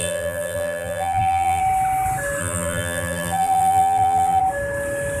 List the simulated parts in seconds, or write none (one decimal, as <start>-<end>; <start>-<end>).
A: 0.0-1.6; 2.4-4.4